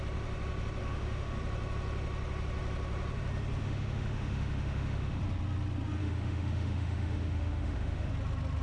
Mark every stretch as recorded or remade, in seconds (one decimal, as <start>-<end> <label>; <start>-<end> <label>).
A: 0.0-0.8 recorded; 0.8-1.4 remade; 1.4-3.6 recorded; 3.6-5.2 remade; 5.2-6.0 recorded; 6.0-8.1 remade; 8.1-8.6 recorded